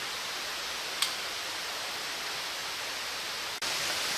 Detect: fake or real real